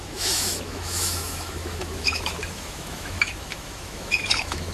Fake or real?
fake